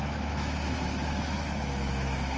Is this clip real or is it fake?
fake